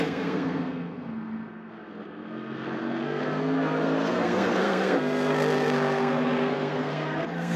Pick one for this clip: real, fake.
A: fake